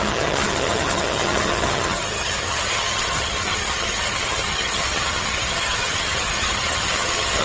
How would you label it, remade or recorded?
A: remade